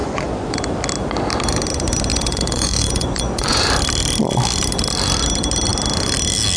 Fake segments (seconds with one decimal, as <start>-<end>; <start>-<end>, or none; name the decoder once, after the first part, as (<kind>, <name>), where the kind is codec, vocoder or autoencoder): 0.0-0.6 (vocoder, Vocos); 2.1-3.6